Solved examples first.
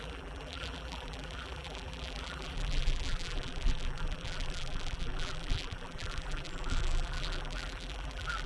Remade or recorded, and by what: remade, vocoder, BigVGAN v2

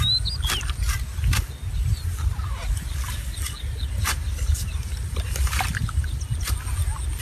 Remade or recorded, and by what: recorded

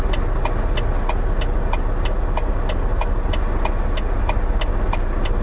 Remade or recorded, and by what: recorded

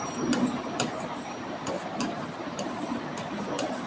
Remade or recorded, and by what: remade, vocoder, BigVGAN v2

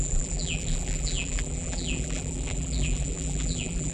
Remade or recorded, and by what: remade, vocoder, BigVGAN v2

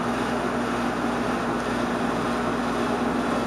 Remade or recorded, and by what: recorded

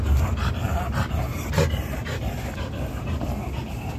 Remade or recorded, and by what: recorded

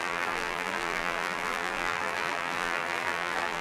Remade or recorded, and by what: remade, vocoder, BigVGAN v2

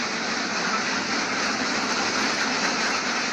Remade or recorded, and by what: recorded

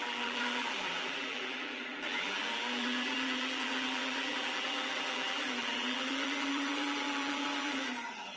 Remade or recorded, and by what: remade, vocoder, BigVGAN v2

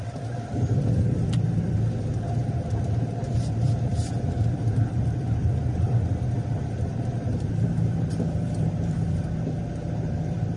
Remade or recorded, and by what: remade, vocoder, BigVGAN v2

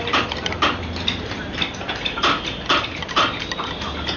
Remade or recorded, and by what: remade, vocoder, BigVGAN v2